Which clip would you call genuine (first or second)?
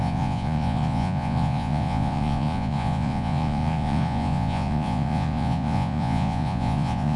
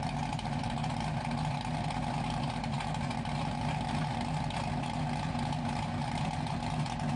second